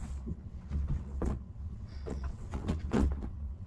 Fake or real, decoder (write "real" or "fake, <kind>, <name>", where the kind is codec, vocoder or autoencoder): fake, vocoder, WaveNeXt